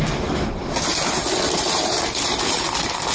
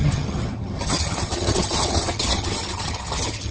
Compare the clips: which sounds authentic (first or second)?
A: first